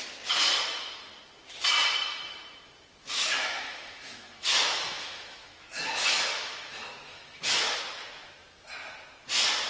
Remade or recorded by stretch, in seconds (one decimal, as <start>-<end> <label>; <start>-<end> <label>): 0.0-3.0 recorded; 3.0-7.8 remade; 7.8-9.7 recorded